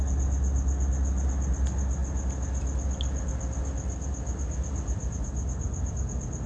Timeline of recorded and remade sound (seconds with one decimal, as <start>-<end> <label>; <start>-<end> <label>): 0.0-6.5 recorded